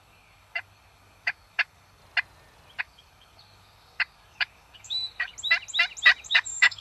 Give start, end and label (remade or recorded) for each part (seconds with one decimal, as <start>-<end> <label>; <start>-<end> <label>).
0.0-2.0 remade; 2.0-2.8 recorded; 2.8-5.3 remade; 5.3-6.2 recorded; 6.2-6.8 remade